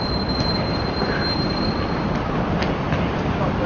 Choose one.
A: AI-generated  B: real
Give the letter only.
B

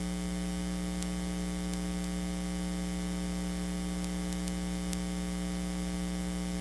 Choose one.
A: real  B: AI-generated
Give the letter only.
A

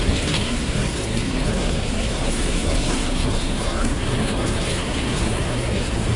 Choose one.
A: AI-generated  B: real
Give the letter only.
A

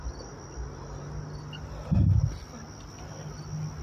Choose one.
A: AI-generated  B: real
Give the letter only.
B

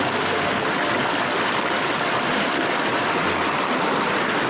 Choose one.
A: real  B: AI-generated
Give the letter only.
A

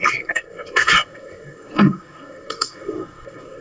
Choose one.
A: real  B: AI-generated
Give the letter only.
B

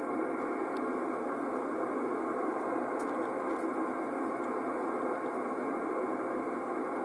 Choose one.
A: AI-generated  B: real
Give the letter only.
B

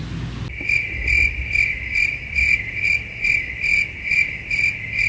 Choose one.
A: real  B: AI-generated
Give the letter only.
A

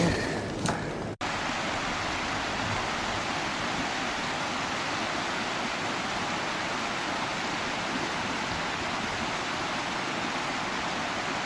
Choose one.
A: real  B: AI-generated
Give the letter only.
A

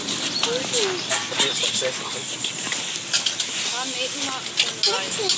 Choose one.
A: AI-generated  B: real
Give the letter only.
B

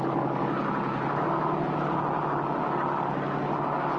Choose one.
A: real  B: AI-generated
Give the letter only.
A